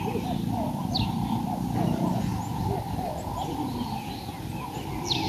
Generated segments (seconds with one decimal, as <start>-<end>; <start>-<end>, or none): none